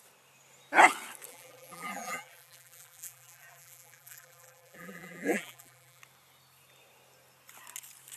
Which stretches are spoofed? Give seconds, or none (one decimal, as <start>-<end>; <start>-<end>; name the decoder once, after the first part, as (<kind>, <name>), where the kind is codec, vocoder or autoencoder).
1.3-6.0 (vocoder, BigVGAN v2)